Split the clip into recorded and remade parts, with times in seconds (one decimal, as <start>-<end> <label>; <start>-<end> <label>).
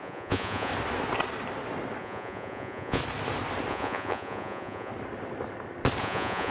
0.0-0.7 remade; 0.7-2.0 recorded; 2.0-3.0 remade; 3.0-3.7 recorded; 3.7-4.9 remade; 4.9-6.0 recorded; 6.0-6.5 remade